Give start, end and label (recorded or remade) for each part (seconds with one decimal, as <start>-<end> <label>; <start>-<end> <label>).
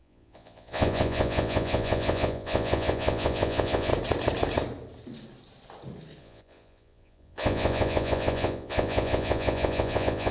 0.0-3.9 remade; 3.9-6.2 recorded; 6.2-10.3 remade